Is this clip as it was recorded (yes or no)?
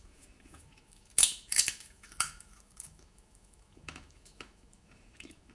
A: no